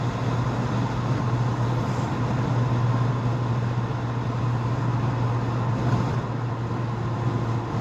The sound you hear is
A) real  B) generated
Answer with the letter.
A